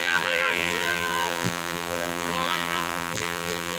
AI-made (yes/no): yes